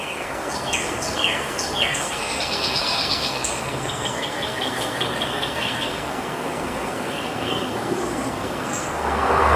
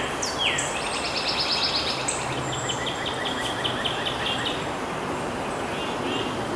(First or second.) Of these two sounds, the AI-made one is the first